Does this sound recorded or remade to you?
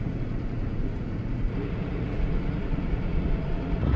remade